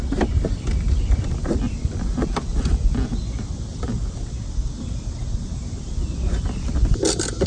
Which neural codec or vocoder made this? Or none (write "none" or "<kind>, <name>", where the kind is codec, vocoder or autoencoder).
none